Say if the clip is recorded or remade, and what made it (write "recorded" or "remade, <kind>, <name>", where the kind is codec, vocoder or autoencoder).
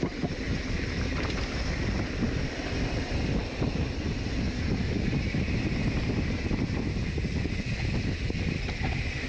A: recorded